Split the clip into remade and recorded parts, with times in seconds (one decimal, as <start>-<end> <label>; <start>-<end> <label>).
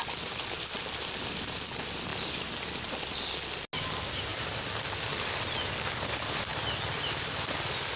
0.0-4.3 recorded; 4.3-5.7 remade; 5.7-6.5 recorded; 6.5-8.0 remade